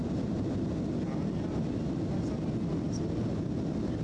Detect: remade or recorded recorded